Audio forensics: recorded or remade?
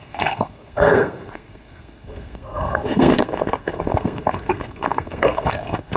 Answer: remade